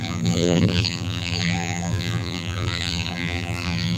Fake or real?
fake